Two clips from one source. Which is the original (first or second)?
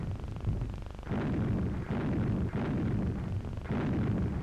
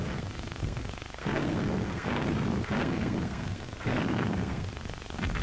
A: first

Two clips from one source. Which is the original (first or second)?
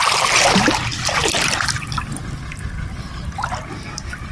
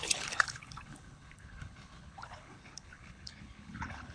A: first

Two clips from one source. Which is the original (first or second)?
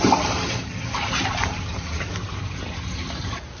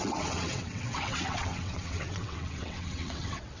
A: first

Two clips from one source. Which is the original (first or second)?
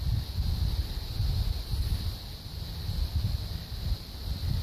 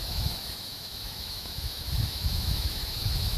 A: first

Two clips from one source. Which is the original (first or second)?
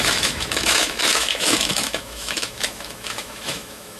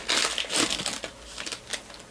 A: second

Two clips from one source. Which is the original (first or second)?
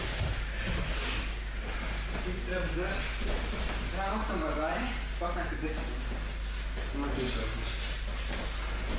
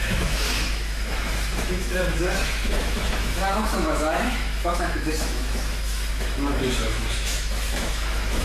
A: first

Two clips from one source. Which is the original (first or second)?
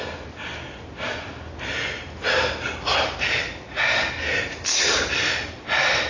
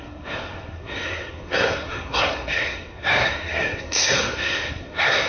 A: first